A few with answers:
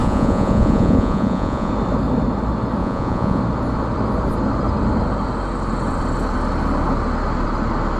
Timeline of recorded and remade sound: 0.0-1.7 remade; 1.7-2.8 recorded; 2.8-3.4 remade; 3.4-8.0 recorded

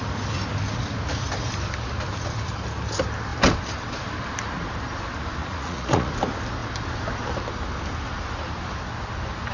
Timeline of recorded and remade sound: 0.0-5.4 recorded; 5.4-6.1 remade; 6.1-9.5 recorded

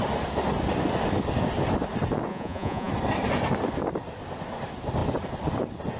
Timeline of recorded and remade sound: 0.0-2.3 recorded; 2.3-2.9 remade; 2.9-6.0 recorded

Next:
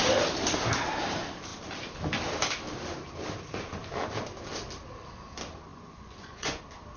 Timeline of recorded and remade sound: 0.0-5.7 recorded; 5.7-6.6 remade; 6.6-7.0 recorded

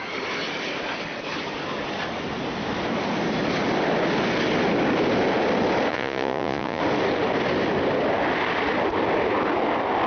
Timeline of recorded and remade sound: 0.0-5.9 recorded; 5.9-6.8 remade; 6.8-10.1 recorded